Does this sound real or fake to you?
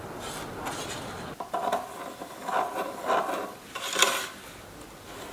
real